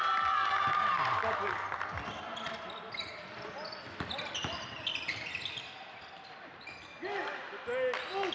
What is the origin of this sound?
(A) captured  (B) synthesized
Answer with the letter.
A